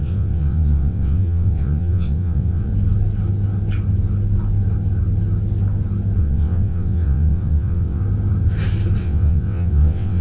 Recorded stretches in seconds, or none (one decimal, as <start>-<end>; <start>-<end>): 2.7-6.2; 8.0-9.0